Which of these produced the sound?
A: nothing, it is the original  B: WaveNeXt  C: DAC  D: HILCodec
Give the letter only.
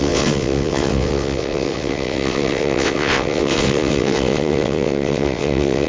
B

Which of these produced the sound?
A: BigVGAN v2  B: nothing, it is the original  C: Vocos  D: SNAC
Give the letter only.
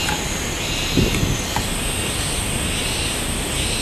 B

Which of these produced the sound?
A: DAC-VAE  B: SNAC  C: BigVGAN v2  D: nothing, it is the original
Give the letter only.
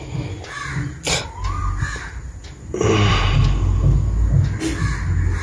D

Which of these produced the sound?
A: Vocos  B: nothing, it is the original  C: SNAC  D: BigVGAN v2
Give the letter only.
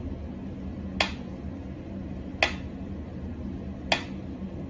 B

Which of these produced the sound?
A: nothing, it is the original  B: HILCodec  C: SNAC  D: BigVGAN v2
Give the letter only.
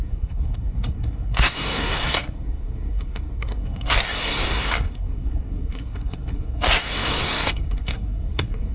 C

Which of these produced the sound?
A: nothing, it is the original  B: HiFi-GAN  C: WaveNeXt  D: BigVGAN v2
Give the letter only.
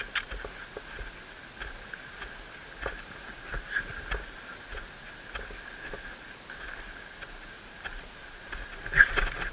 A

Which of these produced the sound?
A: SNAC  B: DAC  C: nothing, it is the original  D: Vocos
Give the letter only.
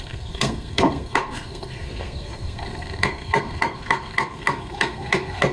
A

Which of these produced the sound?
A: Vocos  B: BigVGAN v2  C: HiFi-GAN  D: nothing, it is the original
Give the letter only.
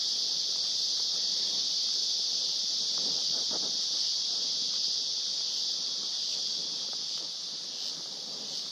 D